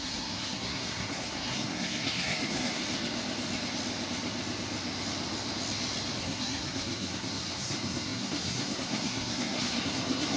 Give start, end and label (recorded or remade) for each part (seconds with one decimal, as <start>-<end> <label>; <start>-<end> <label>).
0.0-2.8 remade; 2.8-6.2 recorded; 6.2-10.4 remade